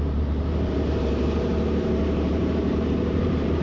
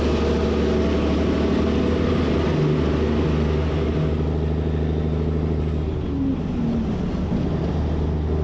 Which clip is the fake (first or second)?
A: first